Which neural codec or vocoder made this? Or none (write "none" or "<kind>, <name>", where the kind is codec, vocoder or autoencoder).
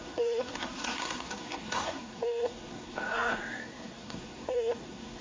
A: codec, SNAC